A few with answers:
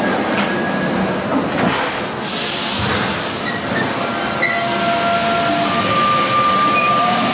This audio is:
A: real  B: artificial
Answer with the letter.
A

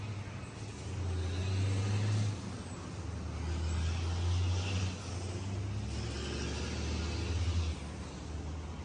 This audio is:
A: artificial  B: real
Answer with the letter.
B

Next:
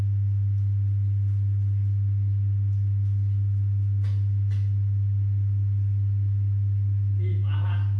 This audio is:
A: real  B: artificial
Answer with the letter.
A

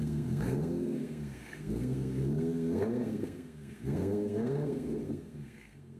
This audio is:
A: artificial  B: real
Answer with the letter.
A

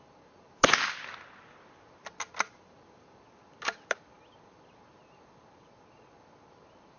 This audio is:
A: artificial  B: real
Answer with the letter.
B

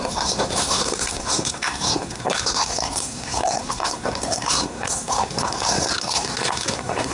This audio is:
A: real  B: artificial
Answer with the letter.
B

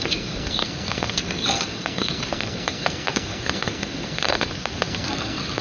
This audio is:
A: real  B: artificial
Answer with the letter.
B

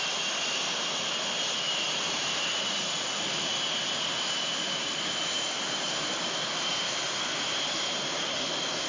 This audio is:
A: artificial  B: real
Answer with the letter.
B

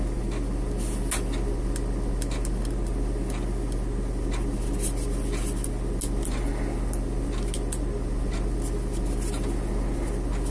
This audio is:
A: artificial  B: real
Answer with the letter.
B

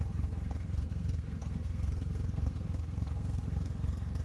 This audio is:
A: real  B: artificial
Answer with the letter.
B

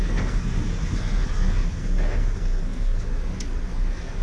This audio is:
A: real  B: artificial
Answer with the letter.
B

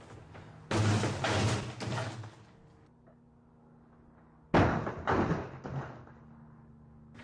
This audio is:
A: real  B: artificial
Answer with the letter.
A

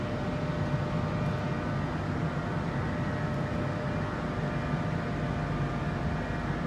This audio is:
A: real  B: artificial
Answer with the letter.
A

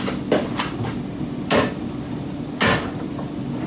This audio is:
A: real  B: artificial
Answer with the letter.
A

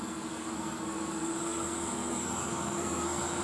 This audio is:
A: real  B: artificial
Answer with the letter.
B